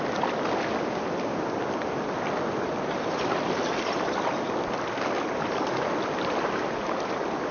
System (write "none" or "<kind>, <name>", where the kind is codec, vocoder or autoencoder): none